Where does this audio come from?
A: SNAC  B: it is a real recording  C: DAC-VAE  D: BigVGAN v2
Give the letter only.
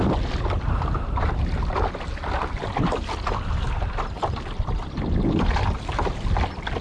B